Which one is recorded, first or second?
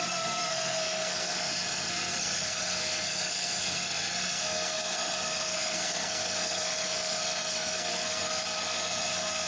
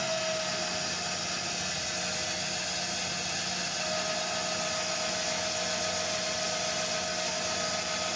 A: second